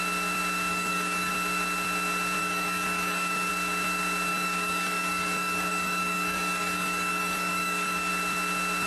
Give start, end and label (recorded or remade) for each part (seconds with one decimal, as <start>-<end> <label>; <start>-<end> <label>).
0.0-0.7 recorded; 0.7-1.3 remade; 1.3-2.4 recorded; 2.4-3.5 remade; 3.5-4.3 recorded; 4.3-8.1 remade; 8.1-8.9 recorded